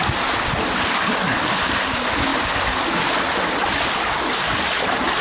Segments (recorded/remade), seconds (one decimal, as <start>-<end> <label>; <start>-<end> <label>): 0.0-5.2 recorded